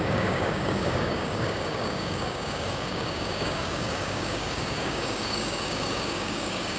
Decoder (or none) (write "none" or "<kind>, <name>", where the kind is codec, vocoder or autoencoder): codec, DAC